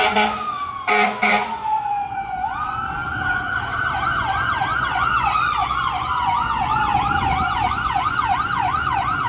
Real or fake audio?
fake